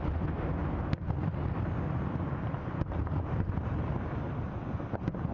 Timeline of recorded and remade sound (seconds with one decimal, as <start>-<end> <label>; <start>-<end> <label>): 0.0-5.3 recorded